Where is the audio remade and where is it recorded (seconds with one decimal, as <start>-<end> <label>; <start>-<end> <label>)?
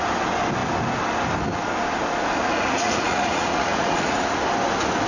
0.0-2.2 recorded; 2.2-4.4 remade; 4.4-5.1 recorded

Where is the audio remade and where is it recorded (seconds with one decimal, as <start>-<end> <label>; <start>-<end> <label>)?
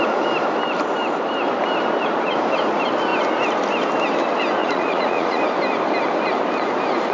0.0-4.6 recorded; 4.6-5.4 remade; 5.4-7.1 recorded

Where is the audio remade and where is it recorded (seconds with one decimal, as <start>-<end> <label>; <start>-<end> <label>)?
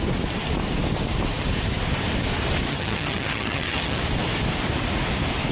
0.0-2.7 recorded; 2.7-4.0 remade; 4.0-5.5 recorded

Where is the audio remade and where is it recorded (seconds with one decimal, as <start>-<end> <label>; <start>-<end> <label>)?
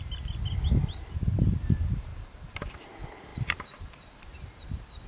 0.0-2.1 recorded; 2.1-2.8 remade; 2.8-3.3 recorded; 3.3-4.6 remade; 4.6-5.1 recorded